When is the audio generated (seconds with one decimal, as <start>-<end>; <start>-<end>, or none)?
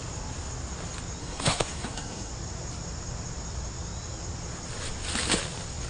1.2-2.3